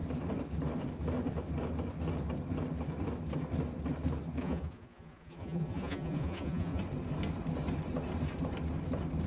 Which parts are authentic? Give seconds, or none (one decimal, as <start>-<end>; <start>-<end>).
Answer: 0.0-4.4; 6.8-9.3